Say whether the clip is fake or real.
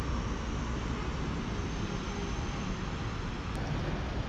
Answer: real